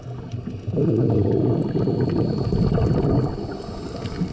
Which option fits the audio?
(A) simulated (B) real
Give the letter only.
B